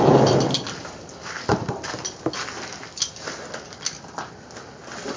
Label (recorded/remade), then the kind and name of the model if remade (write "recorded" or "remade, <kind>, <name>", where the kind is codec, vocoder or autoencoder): recorded